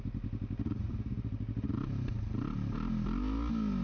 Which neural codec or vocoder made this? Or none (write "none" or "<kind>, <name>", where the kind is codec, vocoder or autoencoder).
none